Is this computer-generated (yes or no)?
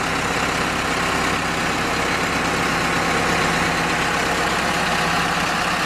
no